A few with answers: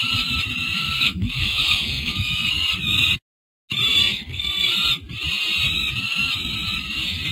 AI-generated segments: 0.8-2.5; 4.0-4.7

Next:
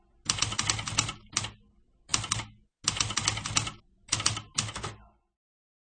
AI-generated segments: none